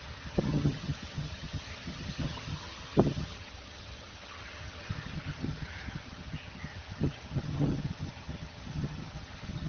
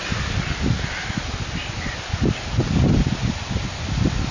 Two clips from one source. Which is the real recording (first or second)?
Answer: second